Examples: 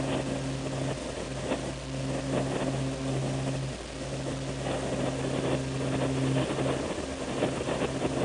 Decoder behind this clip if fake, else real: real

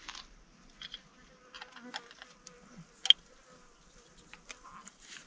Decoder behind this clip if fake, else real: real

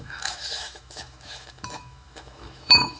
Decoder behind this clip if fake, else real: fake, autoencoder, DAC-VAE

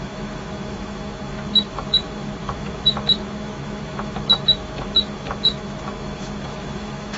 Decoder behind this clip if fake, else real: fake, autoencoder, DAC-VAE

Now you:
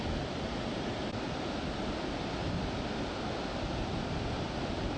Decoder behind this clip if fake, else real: real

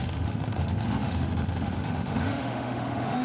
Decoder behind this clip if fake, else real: fake, autoencoder, DAC-VAE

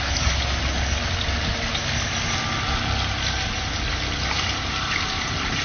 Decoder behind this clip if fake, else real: real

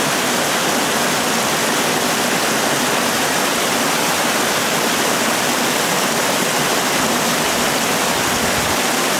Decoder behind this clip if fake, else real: real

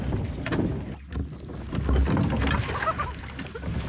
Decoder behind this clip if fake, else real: real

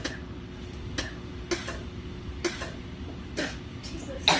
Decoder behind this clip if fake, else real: real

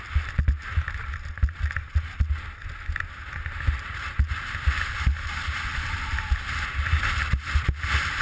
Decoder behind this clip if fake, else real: real